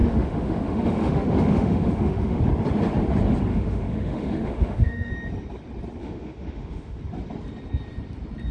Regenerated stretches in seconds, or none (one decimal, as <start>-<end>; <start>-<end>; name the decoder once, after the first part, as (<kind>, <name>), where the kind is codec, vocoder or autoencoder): 0.0-2.4 (autoencoder, DAC-VAE); 3.5-5.1; 6.0-7.0